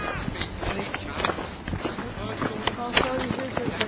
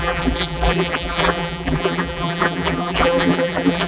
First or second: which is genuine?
first